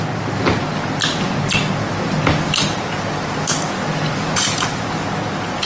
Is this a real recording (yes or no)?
yes